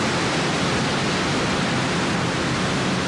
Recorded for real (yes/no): yes